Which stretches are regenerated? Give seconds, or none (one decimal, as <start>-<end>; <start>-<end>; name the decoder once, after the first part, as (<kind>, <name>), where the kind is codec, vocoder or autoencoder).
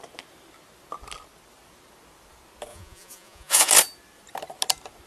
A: 2.7-3.7 (vocoder, Vocos)